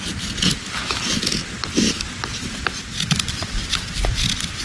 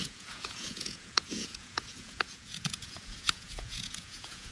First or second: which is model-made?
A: second